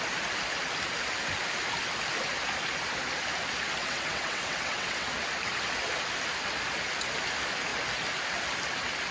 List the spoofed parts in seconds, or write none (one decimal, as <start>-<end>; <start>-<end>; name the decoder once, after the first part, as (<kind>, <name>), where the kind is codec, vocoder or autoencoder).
3.8-5.1 (vocoder, WaveNeXt)